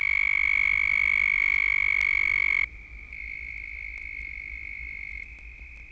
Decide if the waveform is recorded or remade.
recorded